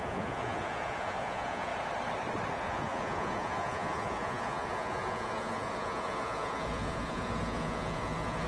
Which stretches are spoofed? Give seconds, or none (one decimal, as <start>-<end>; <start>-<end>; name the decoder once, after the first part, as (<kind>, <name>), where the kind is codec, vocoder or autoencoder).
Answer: 0.0-1.7 (vocoder, Vocos); 2.5-8.5